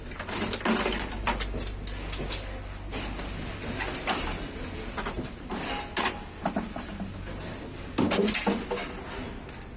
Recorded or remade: recorded